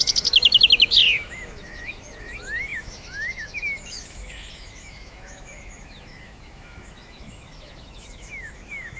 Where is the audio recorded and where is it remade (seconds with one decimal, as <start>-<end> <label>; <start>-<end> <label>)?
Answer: 0.0-9.0 remade